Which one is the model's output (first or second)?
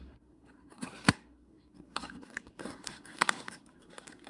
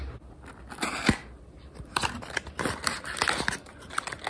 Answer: first